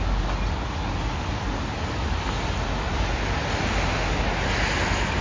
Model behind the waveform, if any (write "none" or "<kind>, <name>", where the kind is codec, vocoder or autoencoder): none